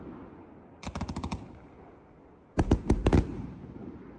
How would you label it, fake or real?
real